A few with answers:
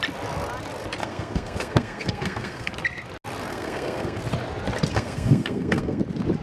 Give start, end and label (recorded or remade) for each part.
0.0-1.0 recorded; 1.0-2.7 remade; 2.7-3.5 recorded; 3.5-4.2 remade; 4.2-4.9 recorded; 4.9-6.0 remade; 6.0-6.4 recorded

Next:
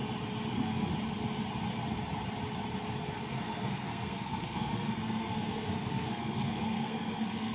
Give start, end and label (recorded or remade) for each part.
0.0-0.5 recorded; 0.5-0.9 remade; 0.9-3.2 recorded; 3.2-7.5 remade